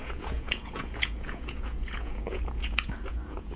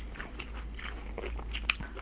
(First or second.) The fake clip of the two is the first